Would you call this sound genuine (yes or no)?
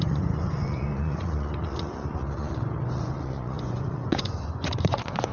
no